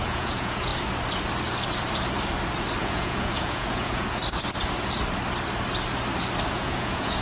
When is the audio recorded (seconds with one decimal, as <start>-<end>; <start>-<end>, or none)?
0.7-2.8; 4.2-6.5